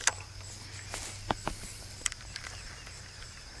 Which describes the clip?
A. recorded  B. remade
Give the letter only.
A